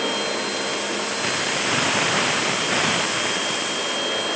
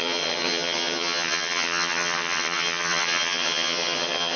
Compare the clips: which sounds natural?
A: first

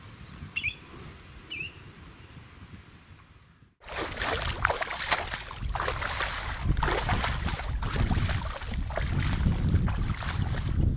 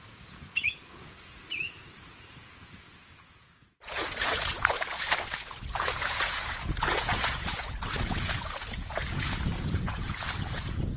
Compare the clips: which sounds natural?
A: first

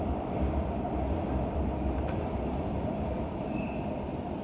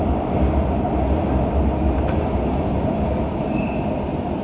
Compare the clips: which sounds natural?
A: second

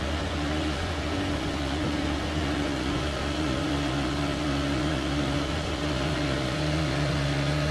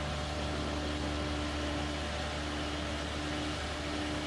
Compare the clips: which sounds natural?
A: second